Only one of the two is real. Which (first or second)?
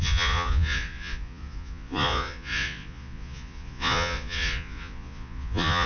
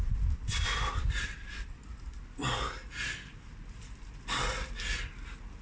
second